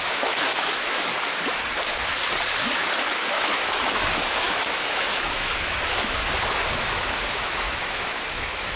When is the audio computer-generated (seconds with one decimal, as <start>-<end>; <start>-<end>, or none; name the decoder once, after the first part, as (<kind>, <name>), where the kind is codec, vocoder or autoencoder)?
0.0-1.1 (autoencoder, DAC-VAE); 3.3-6.2; 6.7-8.8